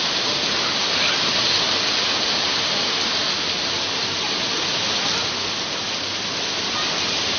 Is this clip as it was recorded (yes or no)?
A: yes